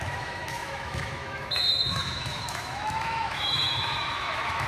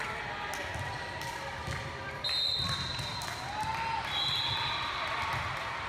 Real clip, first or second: second